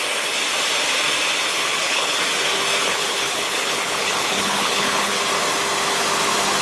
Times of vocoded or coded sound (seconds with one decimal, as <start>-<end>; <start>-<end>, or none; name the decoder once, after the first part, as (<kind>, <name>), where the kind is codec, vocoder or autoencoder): 1.5-2.2 (codec, HILCodec); 2.8-5.2